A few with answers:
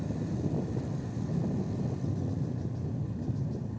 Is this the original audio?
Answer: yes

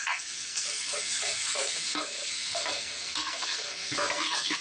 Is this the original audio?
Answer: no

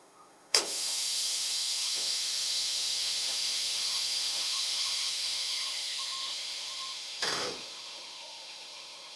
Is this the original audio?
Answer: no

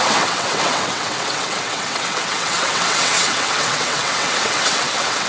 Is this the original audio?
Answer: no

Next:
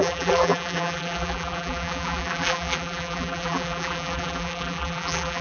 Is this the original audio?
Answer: no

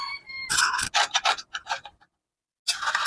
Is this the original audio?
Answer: yes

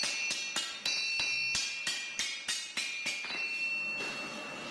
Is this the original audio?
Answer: yes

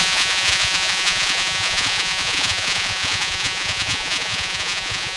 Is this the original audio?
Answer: no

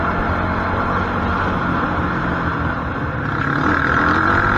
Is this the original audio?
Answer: yes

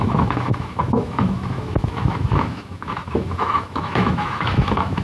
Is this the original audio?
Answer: no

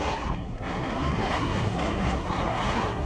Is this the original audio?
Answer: no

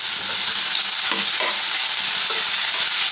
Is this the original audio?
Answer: yes